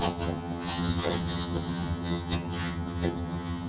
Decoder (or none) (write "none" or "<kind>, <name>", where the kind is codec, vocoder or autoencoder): vocoder, HiFi-GAN